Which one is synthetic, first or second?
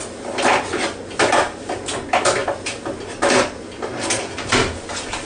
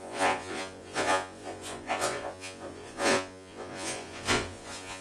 second